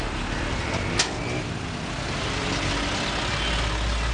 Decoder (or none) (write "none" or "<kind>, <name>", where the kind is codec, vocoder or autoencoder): none